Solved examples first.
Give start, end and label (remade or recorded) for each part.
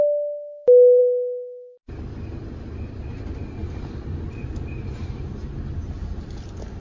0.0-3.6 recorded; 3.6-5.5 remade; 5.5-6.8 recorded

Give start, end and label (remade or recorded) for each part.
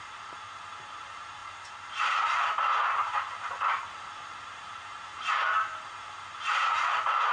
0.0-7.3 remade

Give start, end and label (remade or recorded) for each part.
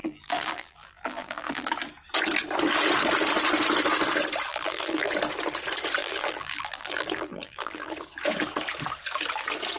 0.0-1.7 remade; 1.7-4.5 recorded; 4.5-5.1 remade; 5.1-6.0 recorded; 6.0-7.9 remade; 7.9-9.8 recorded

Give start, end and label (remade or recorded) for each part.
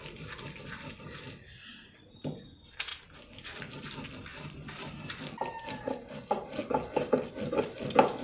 0.0-2.9 recorded; 2.9-3.6 remade; 3.6-8.2 recorded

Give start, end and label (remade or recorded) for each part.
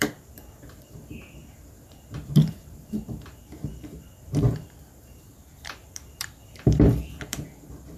0.0-1.4 remade; 1.4-2.5 recorded; 2.5-8.0 remade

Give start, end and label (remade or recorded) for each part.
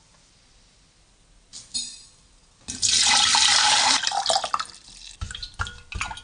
0.0-1.5 recorded; 1.5-4.5 remade; 4.5-6.2 recorded